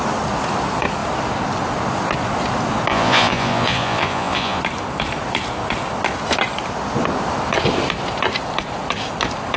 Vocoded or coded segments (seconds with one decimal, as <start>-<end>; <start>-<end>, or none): 2.9-4.6